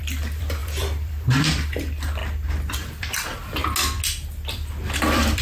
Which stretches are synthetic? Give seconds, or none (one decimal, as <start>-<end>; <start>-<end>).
0.0-2.2; 2.7-3.6; 5.0-5.4